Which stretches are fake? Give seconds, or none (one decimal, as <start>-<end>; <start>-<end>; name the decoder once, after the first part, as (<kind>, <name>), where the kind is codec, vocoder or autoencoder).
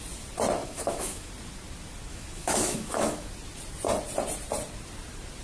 0.6-1.3 (autoencoder, DAC-VAE); 2.1-3.3